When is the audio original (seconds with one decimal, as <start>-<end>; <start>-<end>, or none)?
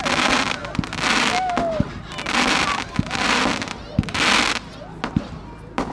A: 0.0-5.9